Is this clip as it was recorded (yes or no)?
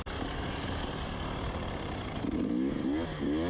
yes